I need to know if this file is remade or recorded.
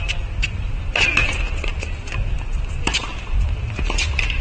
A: recorded